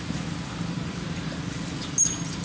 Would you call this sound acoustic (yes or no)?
yes